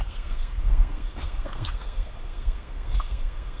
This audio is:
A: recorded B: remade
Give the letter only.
B